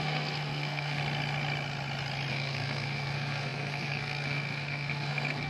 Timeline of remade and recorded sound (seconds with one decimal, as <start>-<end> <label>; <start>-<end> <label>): 0.0-1.0 remade; 1.0-2.3 recorded; 2.3-5.5 remade